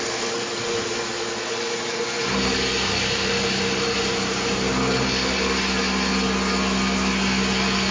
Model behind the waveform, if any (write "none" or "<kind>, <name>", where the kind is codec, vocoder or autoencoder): none